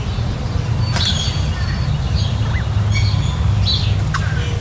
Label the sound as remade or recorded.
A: recorded